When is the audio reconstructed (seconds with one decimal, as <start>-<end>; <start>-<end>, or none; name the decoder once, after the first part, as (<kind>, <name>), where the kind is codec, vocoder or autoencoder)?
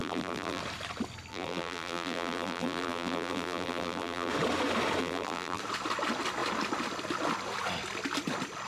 0.0-0.6 (vocoder, BigVGAN v2); 1.3-4.3; 5.0-5.6